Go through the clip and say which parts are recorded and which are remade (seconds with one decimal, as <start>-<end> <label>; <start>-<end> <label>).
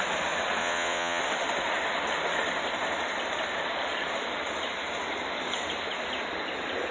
0.0-0.6 recorded; 0.6-1.2 remade; 1.2-6.9 recorded